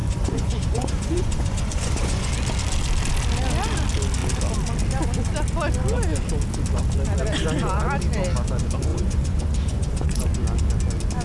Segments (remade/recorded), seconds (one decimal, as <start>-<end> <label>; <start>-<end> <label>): 0.0-2.3 remade; 2.3-8.9 recorded; 8.9-10.2 remade; 10.2-11.2 recorded